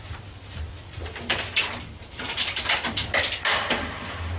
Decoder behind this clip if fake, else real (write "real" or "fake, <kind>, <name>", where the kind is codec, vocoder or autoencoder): fake, vocoder, BigVGAN v2